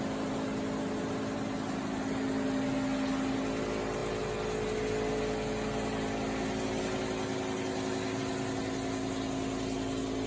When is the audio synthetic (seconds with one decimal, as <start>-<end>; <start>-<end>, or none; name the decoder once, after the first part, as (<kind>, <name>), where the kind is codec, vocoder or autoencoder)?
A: none